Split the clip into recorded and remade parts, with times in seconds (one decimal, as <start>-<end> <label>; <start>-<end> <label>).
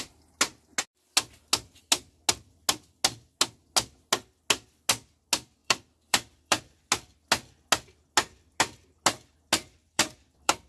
0.0-5.6 recorded; 5.6-6.6 remade; 6.6-9.8 recorded; 9.8-10.7 remade